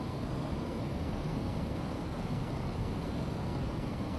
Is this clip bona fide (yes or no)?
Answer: no